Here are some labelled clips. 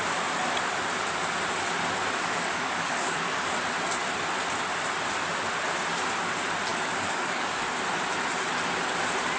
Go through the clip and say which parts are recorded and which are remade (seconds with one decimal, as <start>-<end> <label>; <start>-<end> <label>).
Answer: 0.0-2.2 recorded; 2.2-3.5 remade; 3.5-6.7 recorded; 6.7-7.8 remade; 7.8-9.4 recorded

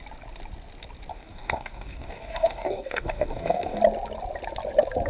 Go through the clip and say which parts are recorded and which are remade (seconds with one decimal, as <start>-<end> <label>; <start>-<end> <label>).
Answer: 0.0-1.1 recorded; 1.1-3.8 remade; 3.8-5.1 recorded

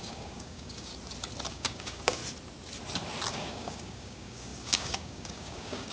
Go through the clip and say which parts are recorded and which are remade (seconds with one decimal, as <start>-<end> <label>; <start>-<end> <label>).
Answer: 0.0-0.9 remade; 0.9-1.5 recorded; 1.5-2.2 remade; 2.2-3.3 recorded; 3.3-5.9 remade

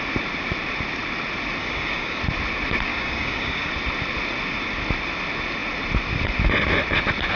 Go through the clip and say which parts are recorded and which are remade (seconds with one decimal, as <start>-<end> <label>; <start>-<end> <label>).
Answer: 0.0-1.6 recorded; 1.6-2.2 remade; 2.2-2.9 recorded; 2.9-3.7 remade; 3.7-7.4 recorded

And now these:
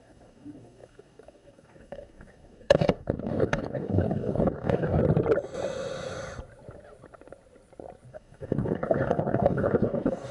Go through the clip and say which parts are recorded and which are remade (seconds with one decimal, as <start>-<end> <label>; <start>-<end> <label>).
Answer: 0.0-5.0 remade; 5.0-8.1 recorded; 8.1-10.3 remade

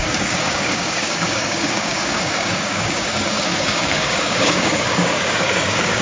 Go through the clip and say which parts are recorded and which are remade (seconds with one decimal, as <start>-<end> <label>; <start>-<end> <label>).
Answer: 0.0-6.0 remade